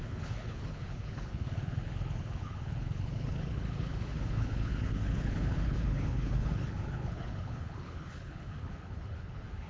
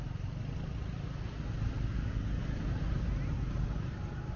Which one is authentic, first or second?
second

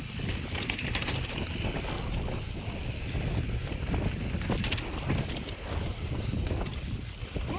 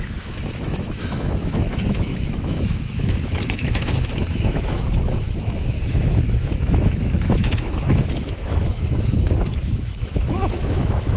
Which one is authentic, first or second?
first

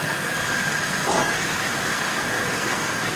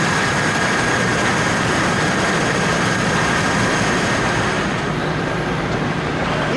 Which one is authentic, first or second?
second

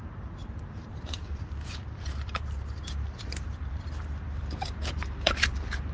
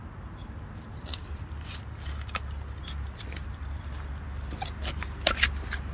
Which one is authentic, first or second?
second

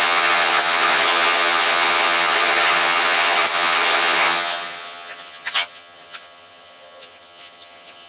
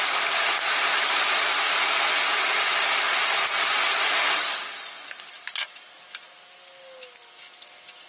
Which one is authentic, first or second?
second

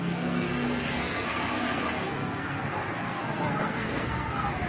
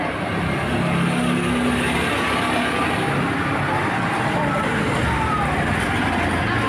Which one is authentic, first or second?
second